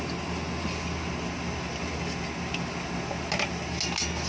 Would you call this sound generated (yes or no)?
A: no